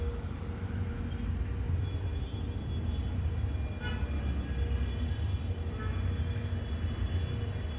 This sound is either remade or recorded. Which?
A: recorded